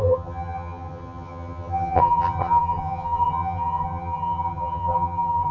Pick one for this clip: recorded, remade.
remade